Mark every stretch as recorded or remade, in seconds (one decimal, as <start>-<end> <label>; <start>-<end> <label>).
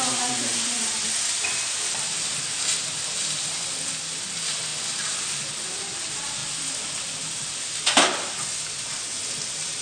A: 0.0-9.8 recorded